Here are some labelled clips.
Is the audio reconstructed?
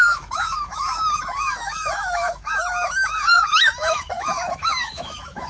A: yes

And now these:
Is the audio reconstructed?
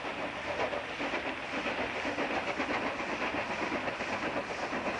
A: no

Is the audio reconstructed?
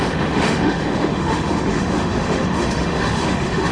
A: yes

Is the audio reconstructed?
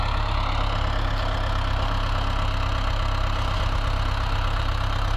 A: no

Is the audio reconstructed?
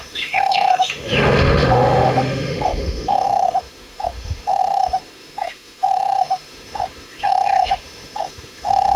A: yes